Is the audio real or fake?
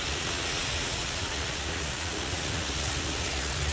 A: fake